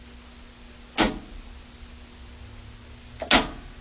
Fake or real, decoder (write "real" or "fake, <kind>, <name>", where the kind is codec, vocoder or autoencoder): real